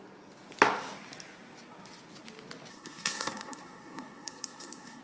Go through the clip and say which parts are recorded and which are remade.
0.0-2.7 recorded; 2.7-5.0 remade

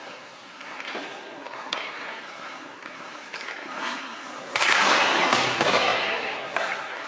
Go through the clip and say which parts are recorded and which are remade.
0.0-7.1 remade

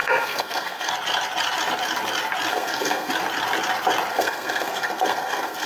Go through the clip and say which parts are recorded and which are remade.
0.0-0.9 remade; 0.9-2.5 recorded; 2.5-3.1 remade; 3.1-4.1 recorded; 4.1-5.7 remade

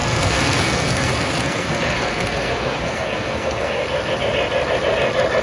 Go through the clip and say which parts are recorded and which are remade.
0.0-3.8 remade; 3.8-5.4 recorded

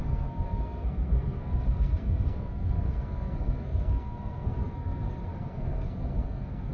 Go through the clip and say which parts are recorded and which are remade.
0.0-6.7 remade